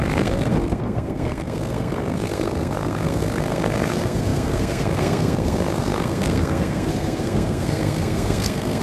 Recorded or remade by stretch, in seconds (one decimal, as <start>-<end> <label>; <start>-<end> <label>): 0.0-8.8 remade